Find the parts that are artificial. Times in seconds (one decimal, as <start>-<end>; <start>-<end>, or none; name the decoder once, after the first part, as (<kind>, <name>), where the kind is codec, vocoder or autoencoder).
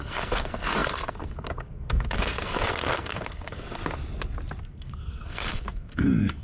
0.0-3.8 (codec, SNAC); 4.6-6.4